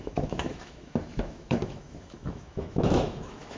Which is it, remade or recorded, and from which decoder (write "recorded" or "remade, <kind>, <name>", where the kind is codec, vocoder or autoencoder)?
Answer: remade, autoencoder, DAC-VAE